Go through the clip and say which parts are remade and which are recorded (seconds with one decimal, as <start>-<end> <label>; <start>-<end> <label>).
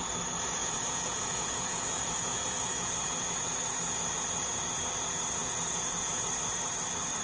0.0-0.6 recorded; 0.6-2.9 remade; 2.9-5.4 recorded; 5.4-6.1 remade; 6.1-7.2 recorded